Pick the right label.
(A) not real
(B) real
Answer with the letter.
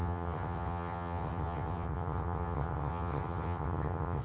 A